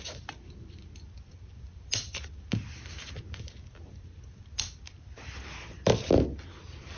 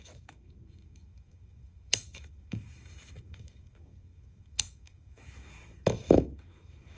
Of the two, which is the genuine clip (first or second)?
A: first